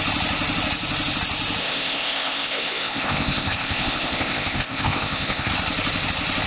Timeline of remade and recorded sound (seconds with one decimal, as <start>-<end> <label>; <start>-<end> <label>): 0.0-1.6 recorded; 1.6-5.5 remade; 5.5-6.5 recorded